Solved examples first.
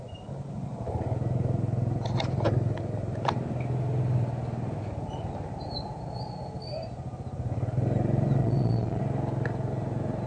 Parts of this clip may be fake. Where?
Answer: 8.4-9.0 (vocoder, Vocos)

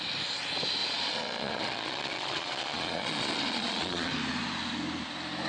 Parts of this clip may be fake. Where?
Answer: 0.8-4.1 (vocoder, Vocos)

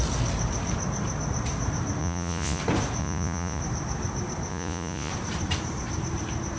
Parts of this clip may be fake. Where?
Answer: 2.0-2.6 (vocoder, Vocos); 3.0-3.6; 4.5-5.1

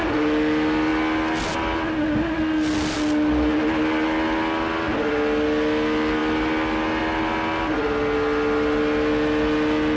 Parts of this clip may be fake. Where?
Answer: none

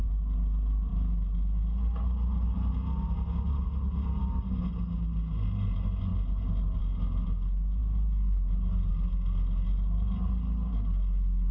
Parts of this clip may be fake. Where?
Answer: none